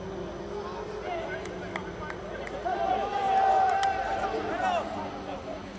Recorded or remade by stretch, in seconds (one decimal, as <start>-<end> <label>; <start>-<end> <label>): 0.0-5.8 recorded

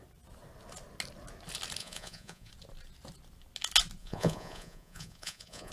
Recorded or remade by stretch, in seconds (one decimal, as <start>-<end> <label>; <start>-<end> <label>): 0.0-1.8 recorded; 1.8-2.5 remade; 2.5-4.0 recorded; 4.0-5.7 remade

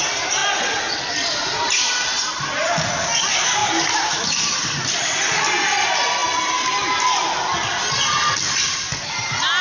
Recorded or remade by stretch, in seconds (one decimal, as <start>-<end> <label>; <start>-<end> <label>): 0.0-3.6 recorded; 3.6-5.4 remade; 5.4-9.6 recorded

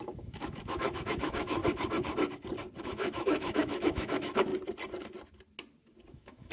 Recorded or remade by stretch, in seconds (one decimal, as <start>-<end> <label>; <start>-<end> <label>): 0.0-1.6 remade; 1.6-2.8 recorded; 2.8-4.5 remade; 4.5-6.1 recorded; 6.1-6.5 remade

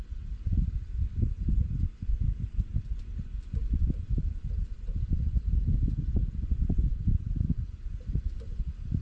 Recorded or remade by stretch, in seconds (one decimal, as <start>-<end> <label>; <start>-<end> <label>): 0.0-4.9 recorded; 4.9-5.5 remade; 5.5-6.9 recorded; 6.9-7.9 remade; 7.9-9.0 recorded